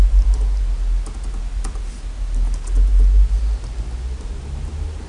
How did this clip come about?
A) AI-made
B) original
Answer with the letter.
B